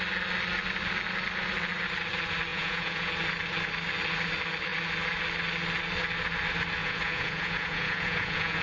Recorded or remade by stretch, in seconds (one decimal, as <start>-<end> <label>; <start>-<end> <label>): 0.0-2.5 recorded; 2.5-3.1 remade; 3.1-6.8 recorded; 6.8-8.6 remade